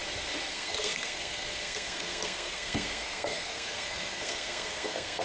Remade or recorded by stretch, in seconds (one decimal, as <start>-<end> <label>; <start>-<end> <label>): 0.0-0.5 recorded; 0.5-5.2 remade